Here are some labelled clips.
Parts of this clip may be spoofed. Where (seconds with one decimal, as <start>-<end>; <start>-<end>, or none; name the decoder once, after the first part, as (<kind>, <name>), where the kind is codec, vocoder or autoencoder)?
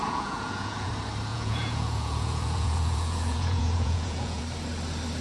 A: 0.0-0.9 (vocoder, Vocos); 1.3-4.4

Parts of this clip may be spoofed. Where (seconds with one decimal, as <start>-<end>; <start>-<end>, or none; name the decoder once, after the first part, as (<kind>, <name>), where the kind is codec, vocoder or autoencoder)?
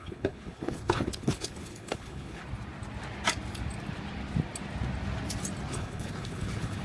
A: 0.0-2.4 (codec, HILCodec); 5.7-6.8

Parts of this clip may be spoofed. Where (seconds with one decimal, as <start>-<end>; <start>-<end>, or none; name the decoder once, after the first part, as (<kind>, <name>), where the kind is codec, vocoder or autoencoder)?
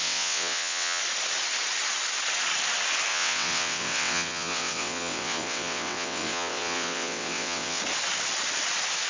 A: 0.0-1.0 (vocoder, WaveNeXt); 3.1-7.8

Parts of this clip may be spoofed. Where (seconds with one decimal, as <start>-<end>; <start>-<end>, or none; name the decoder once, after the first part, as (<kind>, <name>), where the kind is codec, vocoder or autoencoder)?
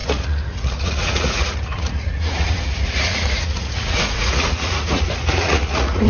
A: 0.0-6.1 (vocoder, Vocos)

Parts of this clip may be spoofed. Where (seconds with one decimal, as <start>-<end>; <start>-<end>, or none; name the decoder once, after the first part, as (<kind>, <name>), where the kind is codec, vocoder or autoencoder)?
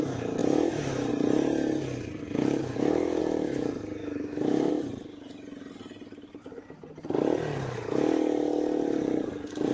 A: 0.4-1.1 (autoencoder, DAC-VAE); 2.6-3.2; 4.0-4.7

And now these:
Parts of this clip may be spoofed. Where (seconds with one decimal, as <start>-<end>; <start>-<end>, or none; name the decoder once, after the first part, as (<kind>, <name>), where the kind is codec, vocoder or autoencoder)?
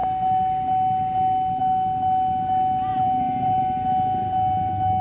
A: 2.9-3.6 (vocoder, Vocos)